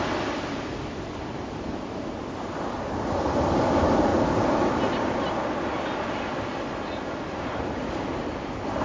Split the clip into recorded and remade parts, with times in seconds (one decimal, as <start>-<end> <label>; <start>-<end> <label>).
0.0-8.8 recorded